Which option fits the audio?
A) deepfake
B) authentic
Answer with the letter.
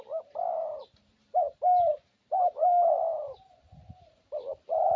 A